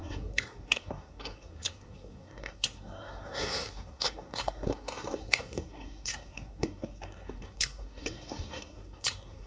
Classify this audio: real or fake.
fake